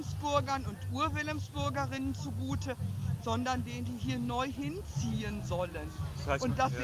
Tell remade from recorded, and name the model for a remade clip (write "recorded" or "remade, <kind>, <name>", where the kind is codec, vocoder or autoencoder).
recorded